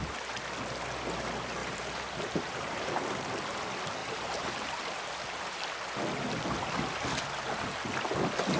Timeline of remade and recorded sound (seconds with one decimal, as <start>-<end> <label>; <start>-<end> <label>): 0.0-1.6 recorded; 1.6-2.9 remade; 2.9-4.0 recorded; 4.0-5.0 remade; 5.0-8.6 recorded